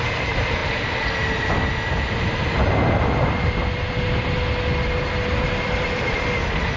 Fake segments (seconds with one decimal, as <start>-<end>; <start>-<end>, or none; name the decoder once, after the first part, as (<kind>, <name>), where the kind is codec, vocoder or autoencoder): none

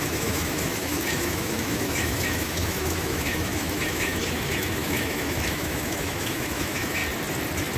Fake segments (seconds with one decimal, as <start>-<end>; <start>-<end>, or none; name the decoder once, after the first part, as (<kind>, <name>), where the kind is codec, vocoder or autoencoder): 0.0-7.0 (autoencoder, DAC-VAE)

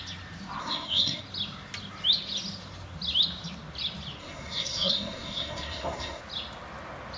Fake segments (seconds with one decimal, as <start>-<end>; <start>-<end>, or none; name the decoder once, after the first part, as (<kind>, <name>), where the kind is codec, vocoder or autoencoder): 0.6-1.2 (codec, SNAC); 4.2-6.2